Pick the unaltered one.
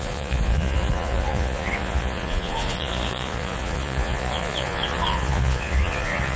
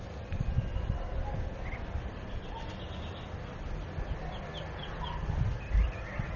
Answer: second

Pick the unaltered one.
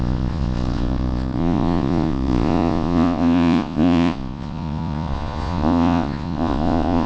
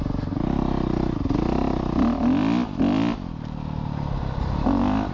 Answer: second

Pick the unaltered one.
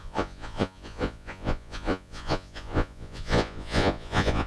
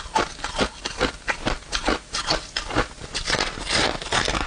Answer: second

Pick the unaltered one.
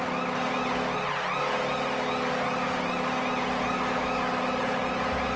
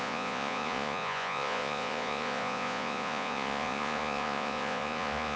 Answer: first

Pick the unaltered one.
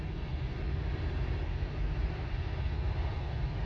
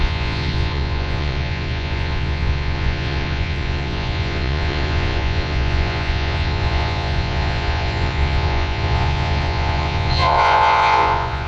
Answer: first